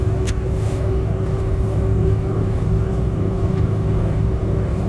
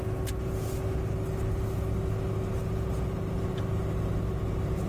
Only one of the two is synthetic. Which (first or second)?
first